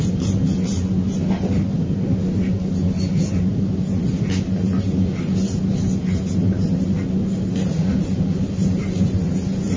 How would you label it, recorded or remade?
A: recorded